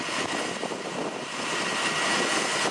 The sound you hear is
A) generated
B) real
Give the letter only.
B